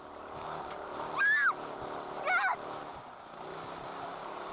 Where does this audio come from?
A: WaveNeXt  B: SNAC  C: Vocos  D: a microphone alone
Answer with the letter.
D